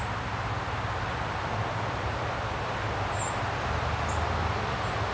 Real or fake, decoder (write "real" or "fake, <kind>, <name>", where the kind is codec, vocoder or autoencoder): real